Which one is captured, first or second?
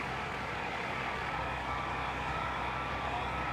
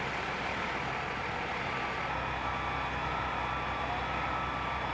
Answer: second